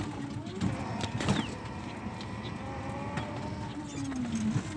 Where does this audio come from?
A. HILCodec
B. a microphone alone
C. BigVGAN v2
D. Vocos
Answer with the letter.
B